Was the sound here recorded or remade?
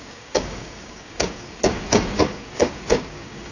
remade